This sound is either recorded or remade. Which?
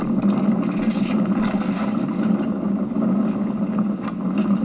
recorded